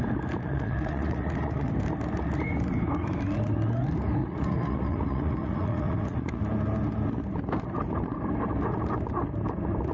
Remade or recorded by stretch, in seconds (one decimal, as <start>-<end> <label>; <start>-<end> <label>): 0.0-0.4 recorded; 0.4-1.7 remade; 1.7-4.2 recorded; 4.2-6.4 remade; 6.4-9.9 recorded